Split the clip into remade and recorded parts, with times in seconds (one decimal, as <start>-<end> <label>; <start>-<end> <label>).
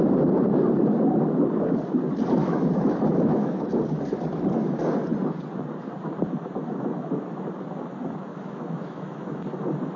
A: 0.0-2.4 recorded; 2.4-3.7 remade; 3.7-8.3 recorded; 8.3-9.4 remade; 9.4-10.0 recorded